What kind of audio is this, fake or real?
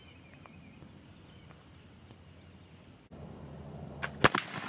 real